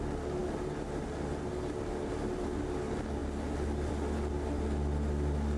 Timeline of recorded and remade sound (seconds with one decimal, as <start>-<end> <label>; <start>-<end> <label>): 0.0-5.6 recorded